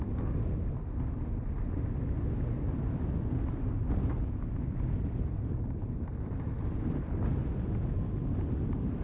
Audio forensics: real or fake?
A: real